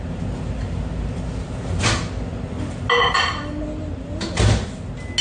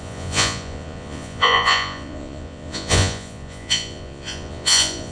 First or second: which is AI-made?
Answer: second